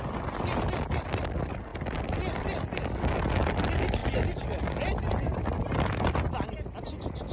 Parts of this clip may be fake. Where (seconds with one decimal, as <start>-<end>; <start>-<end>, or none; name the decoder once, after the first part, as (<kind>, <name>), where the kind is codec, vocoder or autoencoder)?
none